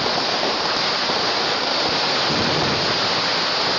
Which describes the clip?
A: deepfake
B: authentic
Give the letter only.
B